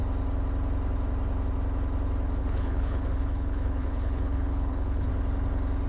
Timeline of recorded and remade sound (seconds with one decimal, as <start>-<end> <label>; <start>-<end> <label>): 0.0-2.4 recorded; 2.4-5.1 remade; 5.1-5.9 recorded